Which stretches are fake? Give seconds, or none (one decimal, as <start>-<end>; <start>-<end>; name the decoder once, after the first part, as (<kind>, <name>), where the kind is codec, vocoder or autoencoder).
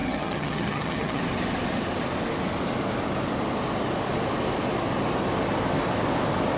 0.0-1.2 (vocoder, HiFi-GAN)